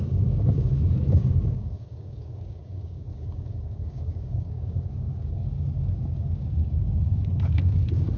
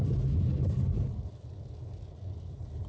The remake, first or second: first